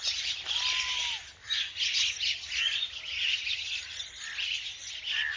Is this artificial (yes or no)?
no